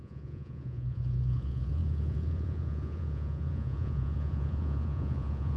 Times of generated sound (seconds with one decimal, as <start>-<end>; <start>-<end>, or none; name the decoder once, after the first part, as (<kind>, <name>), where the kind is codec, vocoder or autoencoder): 0.0-5.6 (vocoder, Vocos)